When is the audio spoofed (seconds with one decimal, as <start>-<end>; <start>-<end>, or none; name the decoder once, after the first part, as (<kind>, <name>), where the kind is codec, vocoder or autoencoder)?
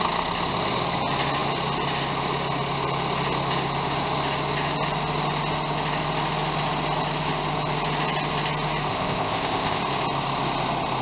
8.9-9.8 (codec, ZipCodec)